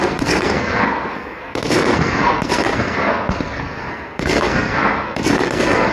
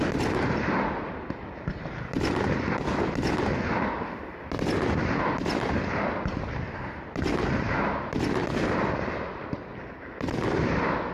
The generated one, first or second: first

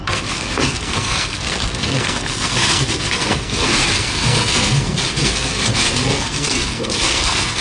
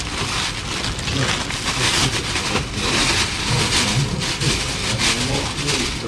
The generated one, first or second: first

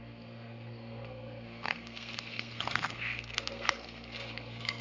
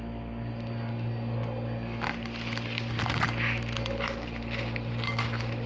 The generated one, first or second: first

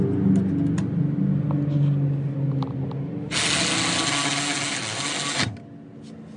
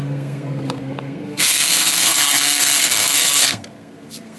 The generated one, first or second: second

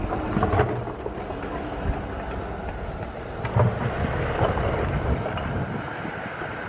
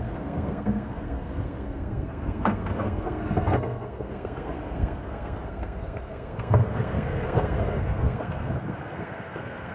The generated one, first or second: second